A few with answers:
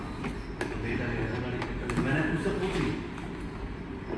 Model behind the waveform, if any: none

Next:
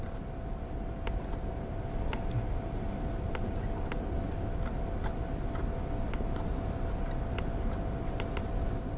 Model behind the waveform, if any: none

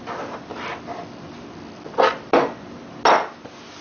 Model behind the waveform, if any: none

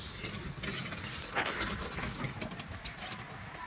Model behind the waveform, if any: none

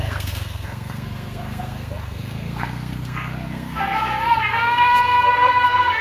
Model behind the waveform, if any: codec, SNAC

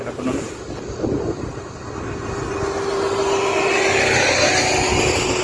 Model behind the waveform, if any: none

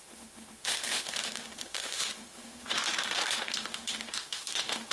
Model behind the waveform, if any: autoencoder, DAC-VAE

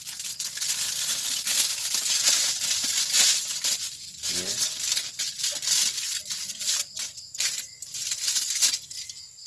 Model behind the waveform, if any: none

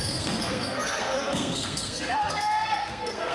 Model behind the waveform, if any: codec, SNAC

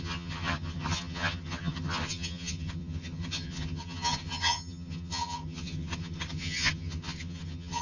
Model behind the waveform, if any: vocoder, HiFi-GAN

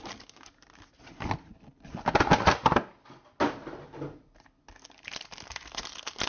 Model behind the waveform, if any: none